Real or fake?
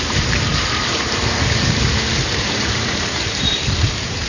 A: fake